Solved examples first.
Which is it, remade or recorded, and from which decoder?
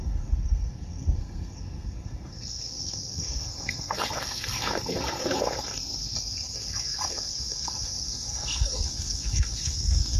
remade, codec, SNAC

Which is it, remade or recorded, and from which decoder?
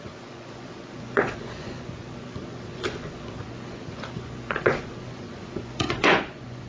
remade, vocoder, Vocos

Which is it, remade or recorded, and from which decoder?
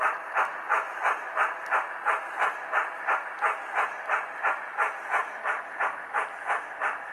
recorded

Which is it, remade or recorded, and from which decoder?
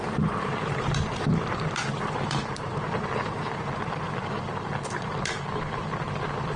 remade, vocoder, BigVGAN v2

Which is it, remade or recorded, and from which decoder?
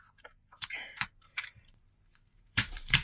remade, vocoder, BigVGAN v2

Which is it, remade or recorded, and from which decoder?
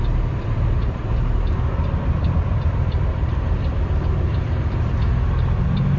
remade, vocoder, BigVGAN v2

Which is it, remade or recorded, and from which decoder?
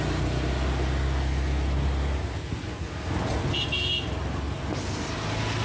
recorded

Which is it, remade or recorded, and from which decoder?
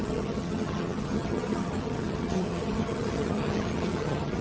remade, vocoder, HiFi-GAN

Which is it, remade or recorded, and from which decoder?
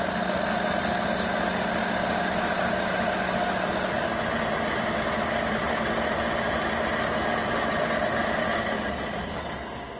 recorded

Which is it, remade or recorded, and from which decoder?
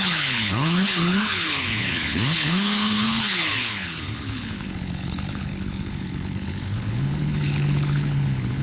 remade, codec, HILCodec